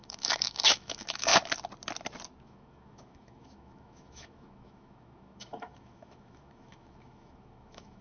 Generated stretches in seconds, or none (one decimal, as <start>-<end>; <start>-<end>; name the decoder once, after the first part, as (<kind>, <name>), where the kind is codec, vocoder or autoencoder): 0.0-1.3 (autoencoder, DAC-VAE); 2.4-8.0